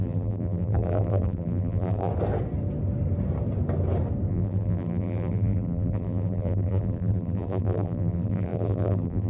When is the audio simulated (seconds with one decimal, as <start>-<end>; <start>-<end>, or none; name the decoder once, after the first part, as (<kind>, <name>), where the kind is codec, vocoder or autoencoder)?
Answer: 0.0-2.1 (vocoder, BigVGAN v2); 4.3-9.3